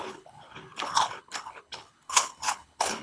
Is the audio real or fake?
fake